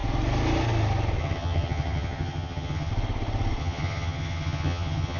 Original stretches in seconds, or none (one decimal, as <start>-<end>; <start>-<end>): 0.0-1.2; 2.9-3.6